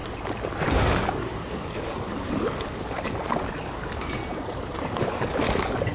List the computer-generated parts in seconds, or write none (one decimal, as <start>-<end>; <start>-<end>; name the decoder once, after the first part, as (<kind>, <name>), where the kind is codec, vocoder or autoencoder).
1.1-4.2 (codec, DAC); 5.1-5.9